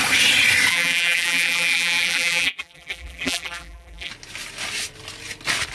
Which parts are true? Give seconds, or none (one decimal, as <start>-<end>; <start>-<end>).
0.0-0.7; 4.1-5.7